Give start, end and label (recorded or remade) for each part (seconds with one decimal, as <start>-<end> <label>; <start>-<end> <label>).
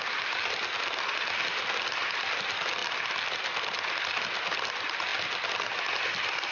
0.0-6.5 recorded